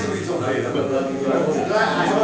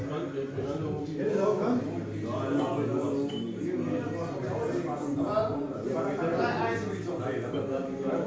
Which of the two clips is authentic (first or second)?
second